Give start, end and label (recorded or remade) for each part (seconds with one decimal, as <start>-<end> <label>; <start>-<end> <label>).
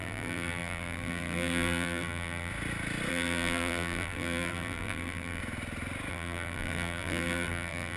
0.0-2.5 remade; 2.5-3.1 recorded; 3.1-5.4 remade; 5.4-6.1 recorded; 6.1-8.0 remade